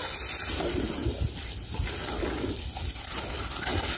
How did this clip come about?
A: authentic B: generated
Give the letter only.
A